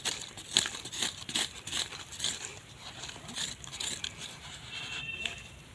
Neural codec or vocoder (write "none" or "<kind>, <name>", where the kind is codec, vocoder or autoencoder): none